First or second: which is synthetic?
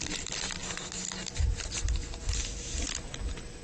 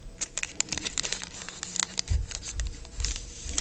second